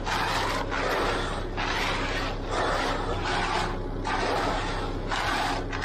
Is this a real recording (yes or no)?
yes